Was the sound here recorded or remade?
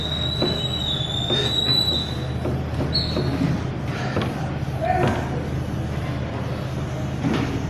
recorded